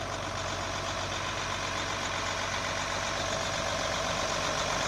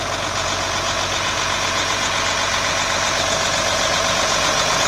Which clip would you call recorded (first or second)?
first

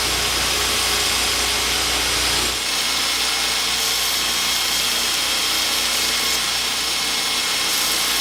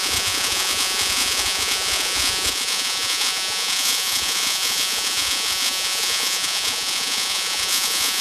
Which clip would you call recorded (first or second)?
first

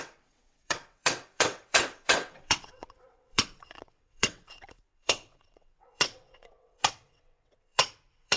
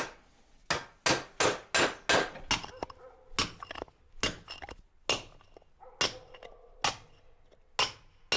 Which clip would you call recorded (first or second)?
second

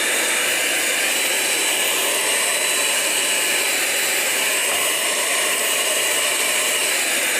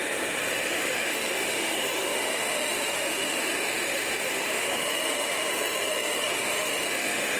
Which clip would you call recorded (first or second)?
first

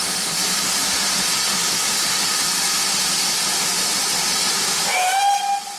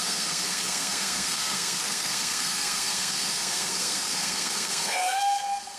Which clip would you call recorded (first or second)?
first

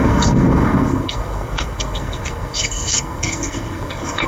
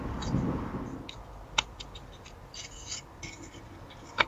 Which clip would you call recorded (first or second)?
second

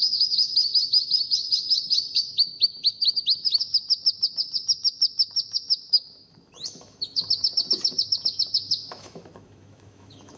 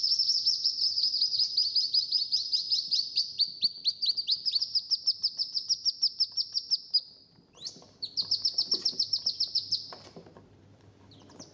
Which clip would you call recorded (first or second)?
second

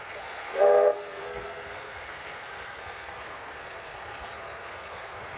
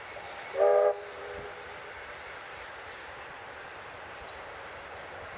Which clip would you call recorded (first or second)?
second